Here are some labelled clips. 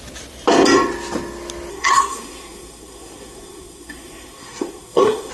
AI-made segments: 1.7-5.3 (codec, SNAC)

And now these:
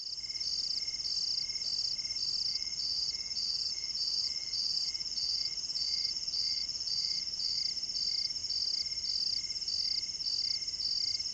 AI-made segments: 2.5-7.6 (vocoder, Vocos)

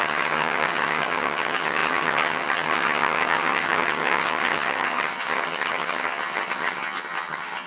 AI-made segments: 0.0-7.7 (vocoder, HiFi-GAN)

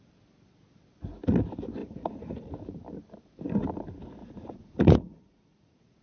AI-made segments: 1.8-2.5 (vocoder, Vocos); 4.2-6.0